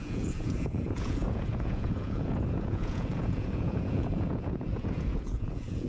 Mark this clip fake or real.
fake